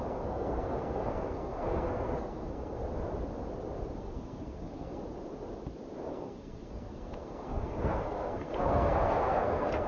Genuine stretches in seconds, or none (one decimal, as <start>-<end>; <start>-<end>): 2.8-4.0; 5.0-6.1